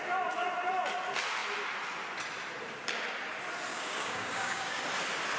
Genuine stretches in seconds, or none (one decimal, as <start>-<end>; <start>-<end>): 0.0-3.7; 4.8-5.4